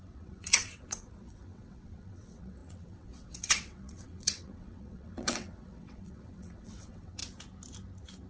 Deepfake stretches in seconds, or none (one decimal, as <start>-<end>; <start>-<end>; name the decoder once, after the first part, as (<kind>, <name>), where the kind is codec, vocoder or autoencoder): 0.0-7.2 (vocoder, WaveNeXt)